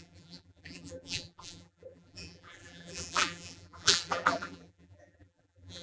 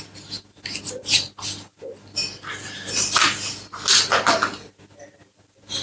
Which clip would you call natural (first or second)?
second